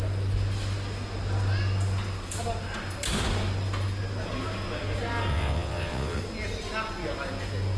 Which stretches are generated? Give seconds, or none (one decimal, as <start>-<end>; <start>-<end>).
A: 5.3-6.2